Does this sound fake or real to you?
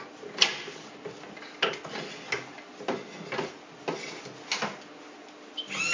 real